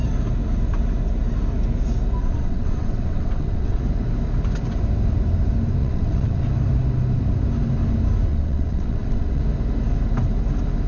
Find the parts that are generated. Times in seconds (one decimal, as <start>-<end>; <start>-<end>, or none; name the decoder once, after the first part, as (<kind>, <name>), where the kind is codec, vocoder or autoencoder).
2.2-3.8 (vocoder, WaveNeXt); 5.8-6.4; 8.3-9.4